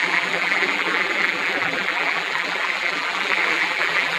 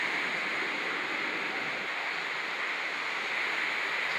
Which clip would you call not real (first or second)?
first